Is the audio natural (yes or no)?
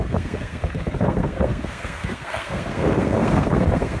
no